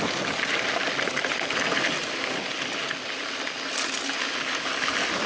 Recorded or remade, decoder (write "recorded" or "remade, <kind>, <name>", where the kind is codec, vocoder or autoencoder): recorded